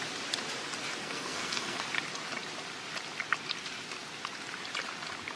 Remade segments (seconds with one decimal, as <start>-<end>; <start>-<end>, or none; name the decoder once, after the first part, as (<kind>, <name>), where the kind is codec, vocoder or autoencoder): 1.0-1.8 (codec, SNAC)